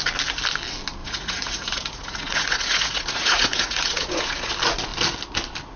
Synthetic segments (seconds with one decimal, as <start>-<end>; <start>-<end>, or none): 1.0-4.5